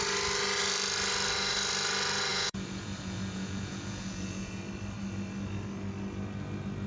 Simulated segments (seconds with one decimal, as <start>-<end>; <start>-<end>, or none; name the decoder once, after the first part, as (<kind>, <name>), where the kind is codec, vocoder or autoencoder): 2.3-4.6 (vocoder, Vocos)